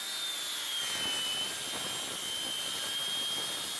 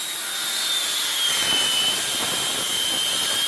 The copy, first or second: second